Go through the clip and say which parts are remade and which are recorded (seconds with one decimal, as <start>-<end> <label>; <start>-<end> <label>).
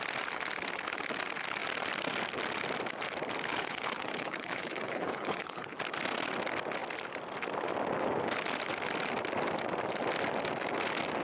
0.0-3.5 recorded; 3.5-5.8 remade; 5.8-11.2 recorded